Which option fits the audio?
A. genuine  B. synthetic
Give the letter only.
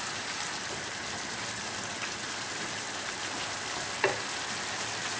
A